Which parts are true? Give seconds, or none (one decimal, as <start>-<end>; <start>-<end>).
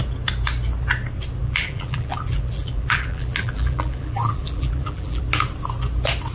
0.0-1.4; 5.2-6.3